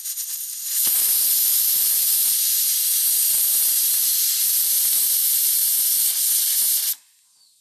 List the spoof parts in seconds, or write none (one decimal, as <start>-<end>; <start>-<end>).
none

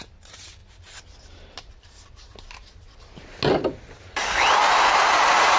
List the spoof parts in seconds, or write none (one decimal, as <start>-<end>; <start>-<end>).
0.0-0.6; 4.0-5.6

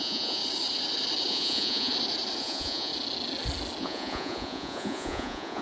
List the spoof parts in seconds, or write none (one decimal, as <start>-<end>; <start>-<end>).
0.0-0.4; 1.3-1.9; 2.4-2.9; 3.8-5.6

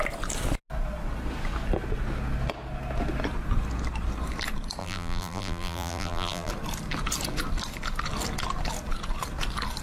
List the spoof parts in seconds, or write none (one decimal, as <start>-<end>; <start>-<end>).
4.8-6.5

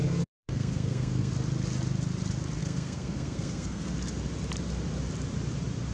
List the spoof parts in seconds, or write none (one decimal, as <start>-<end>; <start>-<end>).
0.0-1.3; 2.6-3.9